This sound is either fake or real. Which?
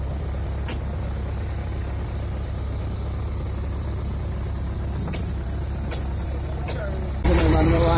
fake